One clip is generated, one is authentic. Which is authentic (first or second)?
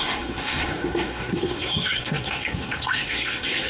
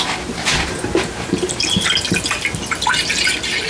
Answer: second